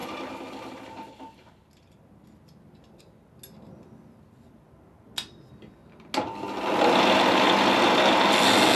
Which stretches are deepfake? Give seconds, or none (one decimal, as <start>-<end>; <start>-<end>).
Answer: none